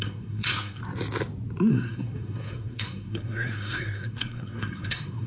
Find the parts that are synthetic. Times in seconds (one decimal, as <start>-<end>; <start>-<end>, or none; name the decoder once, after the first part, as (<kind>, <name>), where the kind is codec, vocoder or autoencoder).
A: 0.0-0.8 (codec, SNAC); 1.7-5.3